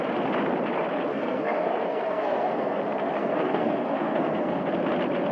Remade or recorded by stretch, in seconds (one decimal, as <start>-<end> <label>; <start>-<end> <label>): 0.0-1.1 recorded; 1.1-2.8 remade; 2.8-3.2 recorded; 3.2-4.7 remade; 4.7-5.3 recorded